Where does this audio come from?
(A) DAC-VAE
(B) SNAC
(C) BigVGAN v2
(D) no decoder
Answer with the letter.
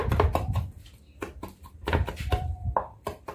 D